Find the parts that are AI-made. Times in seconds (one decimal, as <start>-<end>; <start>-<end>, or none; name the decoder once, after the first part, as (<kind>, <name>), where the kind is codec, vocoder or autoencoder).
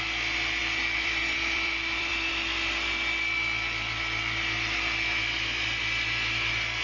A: 0.6-2.3 (vocoder, BigVGAN v2)